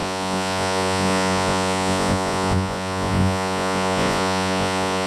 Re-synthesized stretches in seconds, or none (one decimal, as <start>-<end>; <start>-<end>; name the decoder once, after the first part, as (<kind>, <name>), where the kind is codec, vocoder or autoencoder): 0.0-5.1 (vocoder, Vocos)